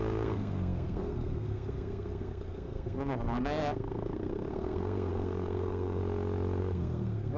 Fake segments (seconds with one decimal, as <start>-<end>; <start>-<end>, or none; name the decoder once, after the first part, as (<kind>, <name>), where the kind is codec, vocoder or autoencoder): 0.0-6.0 (codec, SNAC); 6.6-7.4